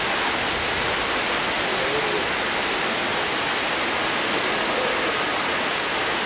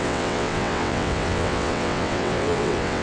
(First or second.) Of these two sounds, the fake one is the second